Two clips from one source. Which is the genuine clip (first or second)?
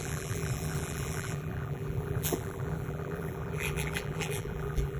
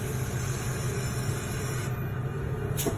second